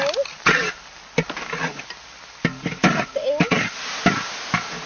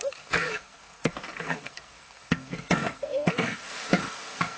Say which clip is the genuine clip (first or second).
first